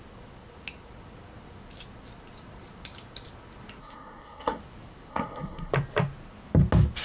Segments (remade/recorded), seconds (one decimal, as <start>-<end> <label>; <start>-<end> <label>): 0.0-3.8 recorded; 3.8-4.6 remade; 4.6-5.1 recorded; 5.1-5.7 remade; 5.7-7.0 recorded